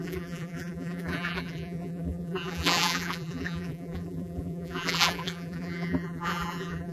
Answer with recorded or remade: remade